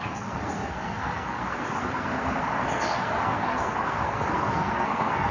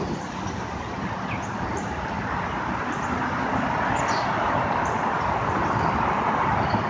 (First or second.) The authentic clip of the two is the second